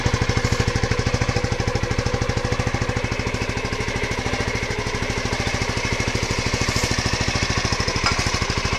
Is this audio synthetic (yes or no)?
no